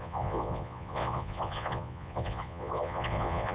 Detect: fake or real fake